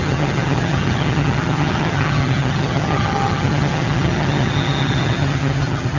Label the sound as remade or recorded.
remade